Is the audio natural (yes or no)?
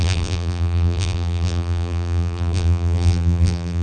no